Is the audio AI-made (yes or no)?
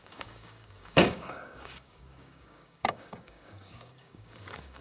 yes